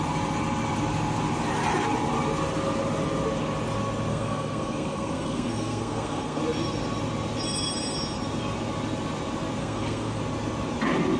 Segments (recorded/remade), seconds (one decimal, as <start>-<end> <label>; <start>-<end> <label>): 0.0-4.1 recorded; 4.1-6.4 remade; 6.4-9.6 recorded; 9.6-10.2 remade; 10.2-11.2 recorded